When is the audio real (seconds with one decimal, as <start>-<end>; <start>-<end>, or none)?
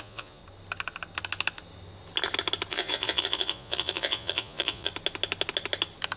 0.4-2.7; 4.9-6.2